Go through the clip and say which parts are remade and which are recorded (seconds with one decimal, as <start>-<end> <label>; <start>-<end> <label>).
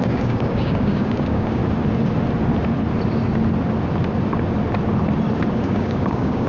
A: 0.0-1.6 remade; 1.6-5.5 recorded; 5.5-6.5 remade